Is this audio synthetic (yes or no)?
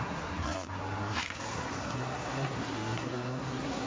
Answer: yes